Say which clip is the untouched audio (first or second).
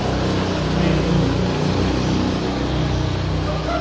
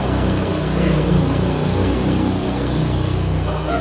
first